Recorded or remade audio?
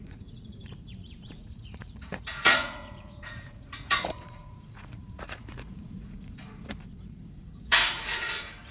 remade